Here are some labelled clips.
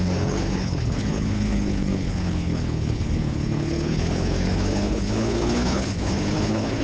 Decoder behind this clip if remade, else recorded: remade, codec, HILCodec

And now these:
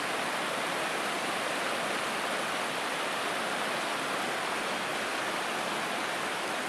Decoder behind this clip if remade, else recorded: recorded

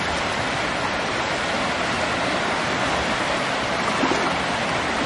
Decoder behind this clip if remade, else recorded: recorded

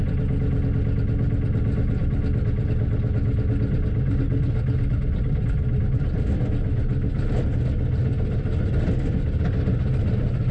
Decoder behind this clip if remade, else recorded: recorded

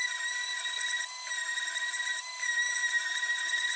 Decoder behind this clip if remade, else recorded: recorded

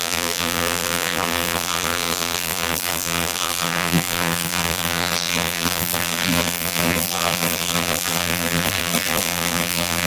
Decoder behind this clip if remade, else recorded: remade, vocoder, BigVGAN v2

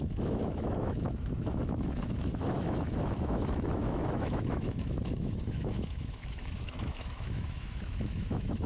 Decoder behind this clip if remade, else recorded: remade, autoencoder, DAC-VAE